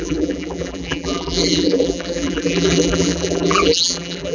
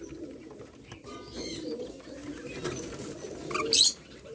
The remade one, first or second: first